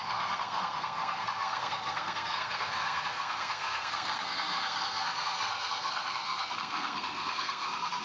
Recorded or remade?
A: remade